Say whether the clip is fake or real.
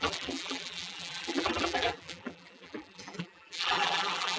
fake